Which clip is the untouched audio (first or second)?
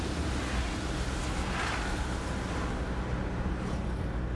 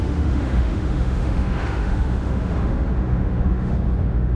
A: first